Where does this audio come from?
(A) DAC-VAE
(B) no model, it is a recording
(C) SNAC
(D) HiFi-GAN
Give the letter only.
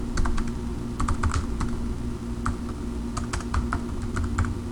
B